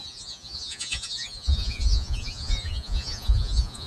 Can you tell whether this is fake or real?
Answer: fake